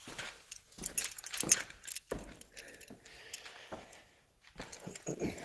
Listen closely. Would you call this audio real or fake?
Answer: real